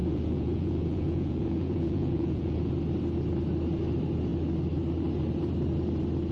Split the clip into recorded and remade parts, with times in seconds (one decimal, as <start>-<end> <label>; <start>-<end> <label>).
0.0-2.7 remade; 2.7-6.3 recorded